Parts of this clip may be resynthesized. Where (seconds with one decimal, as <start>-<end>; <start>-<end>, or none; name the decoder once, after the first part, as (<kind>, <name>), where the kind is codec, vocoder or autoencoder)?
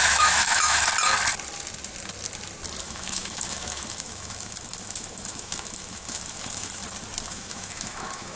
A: 0.0-0.9 (autoencoder, DAC-VAE); 2.8-6.8; 7.3-8.4